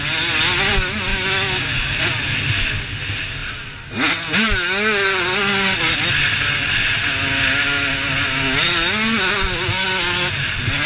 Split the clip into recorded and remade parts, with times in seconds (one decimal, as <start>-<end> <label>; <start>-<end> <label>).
0.0-1.1 recorded; 1.1-2.0 remade; 2.0-10.9 recorded

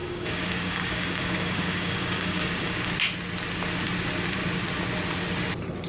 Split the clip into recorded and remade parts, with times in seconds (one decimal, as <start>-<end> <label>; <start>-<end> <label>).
0.0-2.9 remade; 2.9-5.9 recorded

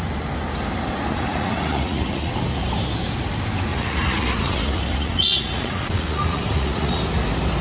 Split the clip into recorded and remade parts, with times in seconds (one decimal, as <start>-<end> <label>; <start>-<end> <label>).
0.0-1.1 recorded; 1.1-2.3 remade; 2.3-3.7 recorded; 3.7-7.0 remade; 7.0-7.6 recorded

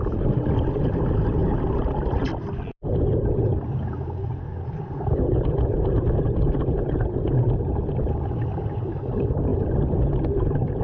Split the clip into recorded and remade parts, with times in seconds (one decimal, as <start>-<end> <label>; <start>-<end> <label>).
0.0-10.8 recorded

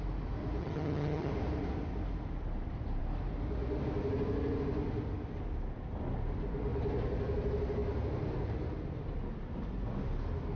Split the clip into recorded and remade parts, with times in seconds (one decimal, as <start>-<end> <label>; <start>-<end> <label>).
0.0-0.6 recorded; 0.6-1.3 remade; 1.3-10.6 recorded

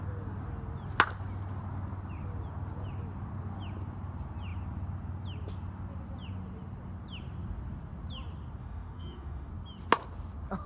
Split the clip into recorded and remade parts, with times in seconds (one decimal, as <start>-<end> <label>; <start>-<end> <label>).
0.0-8.6 recorded; 8.6-9.5 remade; 9.5-10.7 recorded

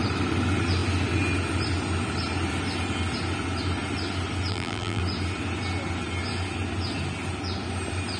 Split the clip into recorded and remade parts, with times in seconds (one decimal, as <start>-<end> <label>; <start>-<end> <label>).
0.0-4.5 recorded; 4.5-5.0 remade; 5.0-8.2 recorded